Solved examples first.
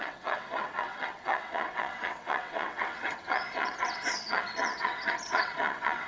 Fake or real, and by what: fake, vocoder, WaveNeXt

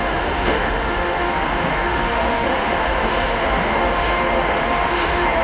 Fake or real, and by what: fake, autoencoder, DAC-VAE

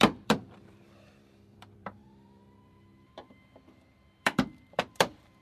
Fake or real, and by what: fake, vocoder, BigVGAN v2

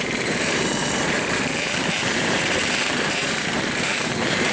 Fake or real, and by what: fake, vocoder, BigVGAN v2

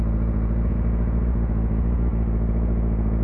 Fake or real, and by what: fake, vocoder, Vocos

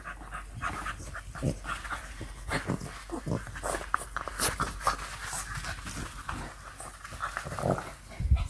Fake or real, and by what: real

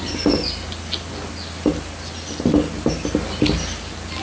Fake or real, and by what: real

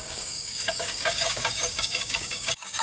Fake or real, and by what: fake, codec, DAC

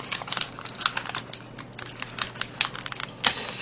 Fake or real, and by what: real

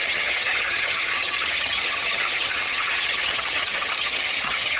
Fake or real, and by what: fake, vocoder, HiFi-GAN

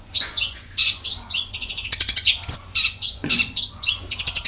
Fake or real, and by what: fake, vocoder, Vocos